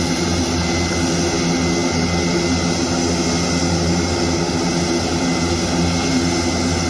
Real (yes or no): yes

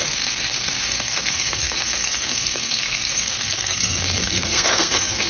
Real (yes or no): no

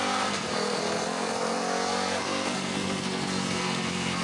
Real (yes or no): no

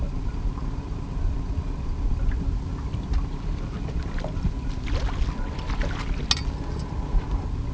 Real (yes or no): yes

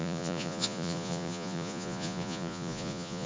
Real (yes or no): no